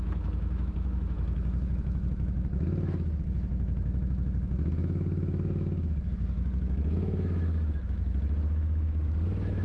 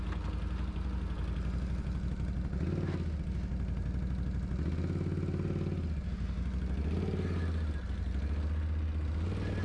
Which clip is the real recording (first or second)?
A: second